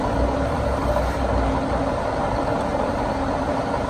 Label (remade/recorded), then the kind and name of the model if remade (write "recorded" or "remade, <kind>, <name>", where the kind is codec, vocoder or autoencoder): remade, vocoder, BigVGAN v2